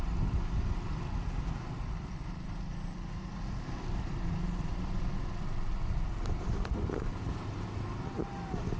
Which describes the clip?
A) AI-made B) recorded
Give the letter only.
B